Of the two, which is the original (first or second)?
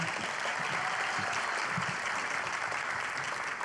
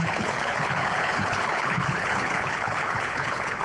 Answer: first